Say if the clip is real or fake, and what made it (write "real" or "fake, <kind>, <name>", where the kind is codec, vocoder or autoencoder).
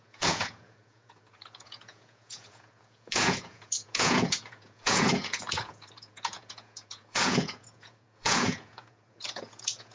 fake, vocoder, Vocos